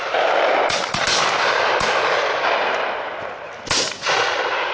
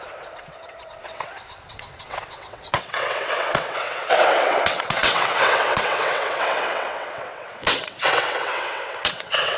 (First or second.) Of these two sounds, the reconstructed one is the second